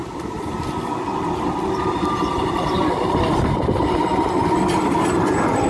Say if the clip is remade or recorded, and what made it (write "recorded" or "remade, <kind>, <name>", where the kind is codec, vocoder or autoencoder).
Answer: recorded